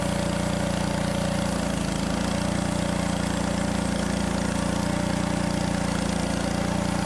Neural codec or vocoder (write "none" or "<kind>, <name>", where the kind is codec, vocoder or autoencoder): none